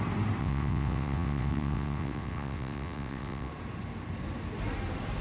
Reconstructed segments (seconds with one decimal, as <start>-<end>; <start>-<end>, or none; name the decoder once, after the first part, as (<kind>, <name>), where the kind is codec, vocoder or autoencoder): 0.4-3.5 (vocoder, WaveNeXt)